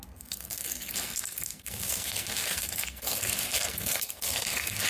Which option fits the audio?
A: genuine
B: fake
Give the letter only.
B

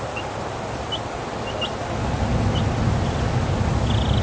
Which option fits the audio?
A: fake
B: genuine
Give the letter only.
B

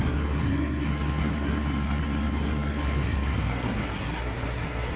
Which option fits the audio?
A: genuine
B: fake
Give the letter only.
B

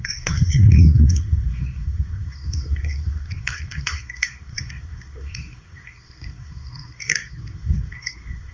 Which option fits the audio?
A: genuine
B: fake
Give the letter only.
B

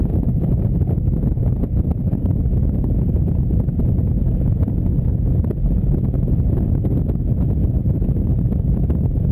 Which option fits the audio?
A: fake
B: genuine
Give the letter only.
B